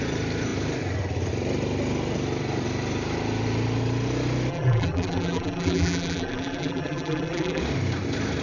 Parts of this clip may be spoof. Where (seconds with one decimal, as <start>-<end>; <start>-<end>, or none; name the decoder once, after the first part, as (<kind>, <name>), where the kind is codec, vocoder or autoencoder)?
4.5-7.6 (vocoder, BigVGAN v2)